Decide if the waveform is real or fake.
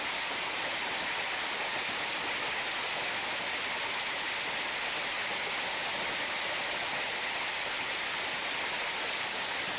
real